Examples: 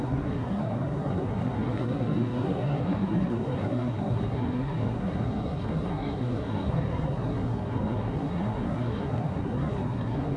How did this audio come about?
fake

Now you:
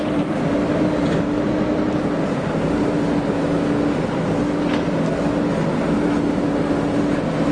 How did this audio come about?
real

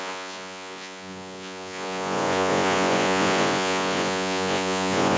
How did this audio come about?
fake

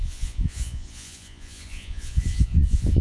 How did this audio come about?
fake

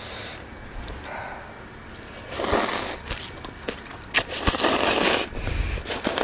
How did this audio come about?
real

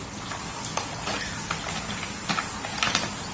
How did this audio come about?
real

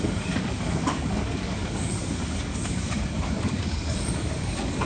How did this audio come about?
fake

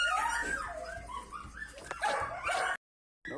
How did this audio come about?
real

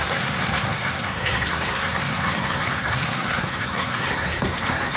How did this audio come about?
fake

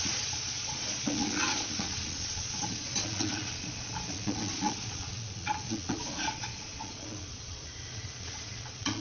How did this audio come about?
fake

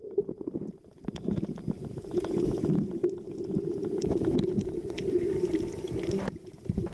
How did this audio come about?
fake